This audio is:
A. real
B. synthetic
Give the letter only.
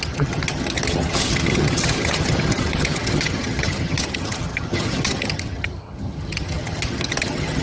B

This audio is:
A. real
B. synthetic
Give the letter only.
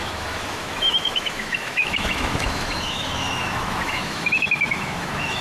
B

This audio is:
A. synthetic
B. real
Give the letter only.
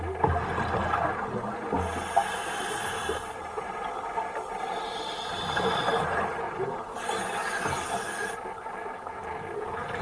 B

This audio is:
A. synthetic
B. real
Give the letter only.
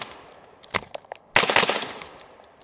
B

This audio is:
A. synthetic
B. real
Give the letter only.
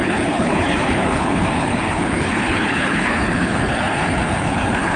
A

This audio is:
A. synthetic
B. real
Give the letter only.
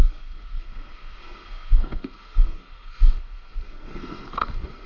A